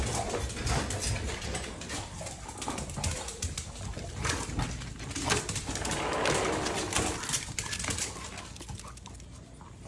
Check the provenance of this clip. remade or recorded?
recorded